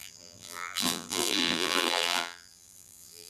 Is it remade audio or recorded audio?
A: remade